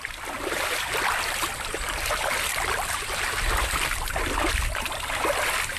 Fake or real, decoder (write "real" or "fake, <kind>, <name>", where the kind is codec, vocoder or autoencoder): fake, vocoder, BigVGAN v2